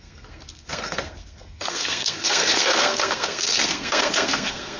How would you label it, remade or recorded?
remade